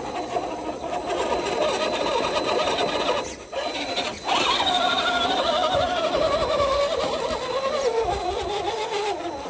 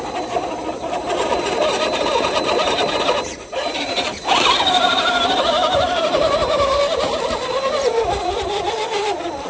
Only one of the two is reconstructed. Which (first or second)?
second